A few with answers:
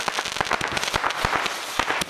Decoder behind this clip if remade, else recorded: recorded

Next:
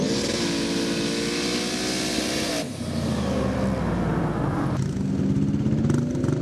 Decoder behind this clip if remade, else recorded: recorded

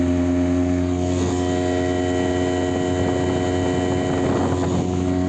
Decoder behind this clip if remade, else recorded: recorded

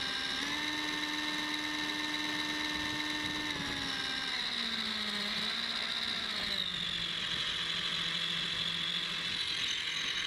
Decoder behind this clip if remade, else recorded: recorded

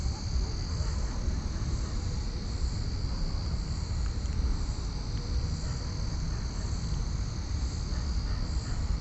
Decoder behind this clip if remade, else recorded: recorded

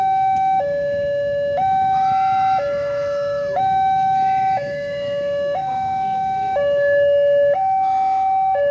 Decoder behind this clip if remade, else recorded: remade, autoencoder, DAC-VAE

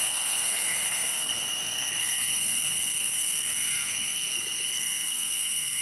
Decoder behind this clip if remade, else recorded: remade, codec, SNAC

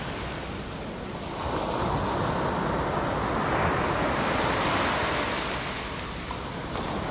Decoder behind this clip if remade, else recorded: recorded